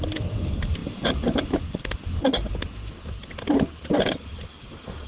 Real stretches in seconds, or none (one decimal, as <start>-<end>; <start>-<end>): none